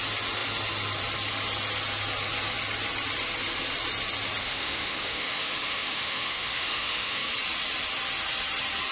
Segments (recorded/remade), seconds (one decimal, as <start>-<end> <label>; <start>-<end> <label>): 0.0-4.4 recorded; 4.4-7.3 remade; 7.3-8.9 recorded